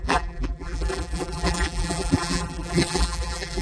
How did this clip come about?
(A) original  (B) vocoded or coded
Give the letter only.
B